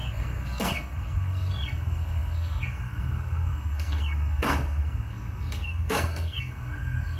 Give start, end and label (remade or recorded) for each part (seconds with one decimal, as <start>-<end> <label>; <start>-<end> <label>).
0.0-7.2 remade